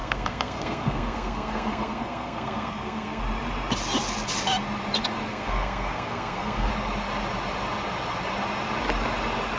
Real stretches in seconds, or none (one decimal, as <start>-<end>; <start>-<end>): 3.2-5.3; 6.7-9.6